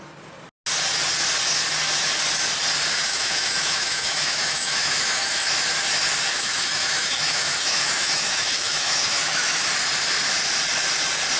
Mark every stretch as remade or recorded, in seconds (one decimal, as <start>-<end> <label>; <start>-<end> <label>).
0.0-2.9 recorded; 2.9-5.5 remade; 5.5-6.3 recorded; 6.3-9.7 remade; 9.7-11.4 recorded